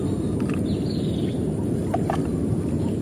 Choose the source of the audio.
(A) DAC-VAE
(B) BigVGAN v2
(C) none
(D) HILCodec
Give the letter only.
C